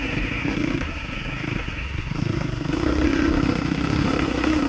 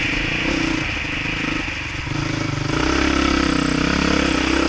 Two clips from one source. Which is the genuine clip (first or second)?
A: second